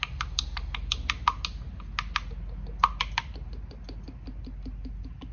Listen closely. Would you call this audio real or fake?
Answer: real